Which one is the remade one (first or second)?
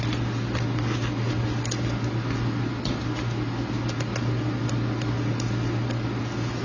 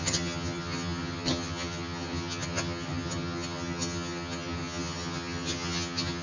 second